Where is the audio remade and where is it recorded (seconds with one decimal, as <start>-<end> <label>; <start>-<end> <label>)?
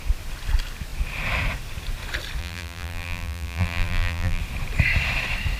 0.0-2.4 recorded; 2.4-4.4 remade; 4.4-5.6 recorded